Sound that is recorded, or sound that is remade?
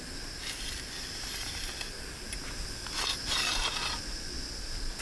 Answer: recorded